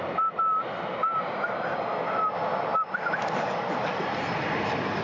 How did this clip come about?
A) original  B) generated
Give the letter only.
A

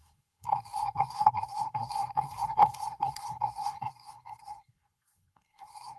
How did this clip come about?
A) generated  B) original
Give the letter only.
A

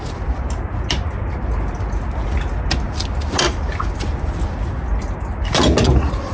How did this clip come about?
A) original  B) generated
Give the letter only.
A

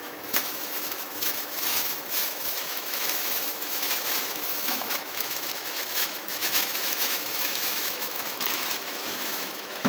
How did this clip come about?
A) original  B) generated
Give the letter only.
B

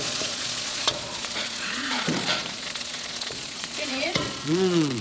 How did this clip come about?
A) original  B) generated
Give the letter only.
B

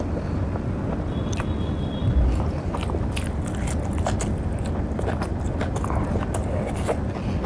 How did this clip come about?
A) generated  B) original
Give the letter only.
B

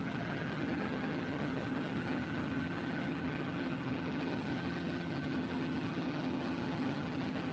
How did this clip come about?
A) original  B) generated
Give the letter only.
B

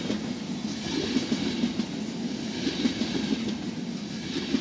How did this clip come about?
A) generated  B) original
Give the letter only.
B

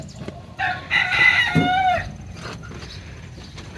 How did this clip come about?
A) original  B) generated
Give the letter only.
A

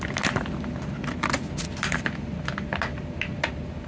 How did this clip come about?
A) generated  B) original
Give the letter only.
B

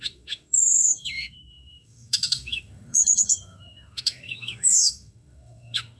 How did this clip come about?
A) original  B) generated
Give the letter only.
B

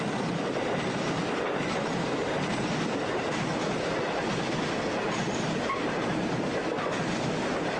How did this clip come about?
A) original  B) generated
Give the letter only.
A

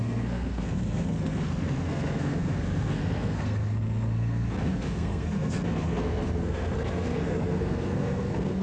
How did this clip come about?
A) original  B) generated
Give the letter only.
B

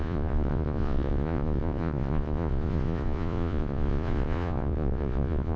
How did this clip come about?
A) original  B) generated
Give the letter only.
B